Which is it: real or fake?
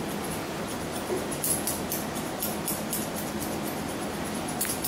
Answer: real